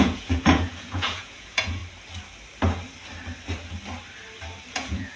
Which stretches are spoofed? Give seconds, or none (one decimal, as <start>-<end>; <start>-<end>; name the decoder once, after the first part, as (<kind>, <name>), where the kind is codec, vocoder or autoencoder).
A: 0.0-1.8 (vocoder, Vocos); 4.7-5.2